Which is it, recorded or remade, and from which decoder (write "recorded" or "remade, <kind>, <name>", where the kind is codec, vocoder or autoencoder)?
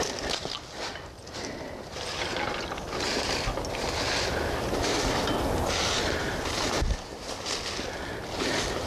recorded